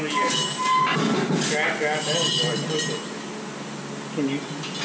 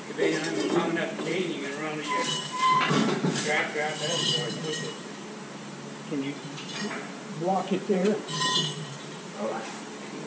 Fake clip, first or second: second